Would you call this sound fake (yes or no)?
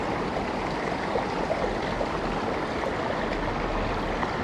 no